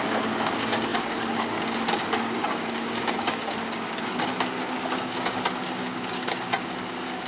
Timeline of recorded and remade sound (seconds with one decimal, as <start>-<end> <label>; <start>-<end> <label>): 0.0-7.3 remade